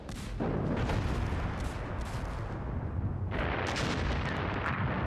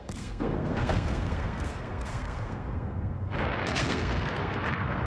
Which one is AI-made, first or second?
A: second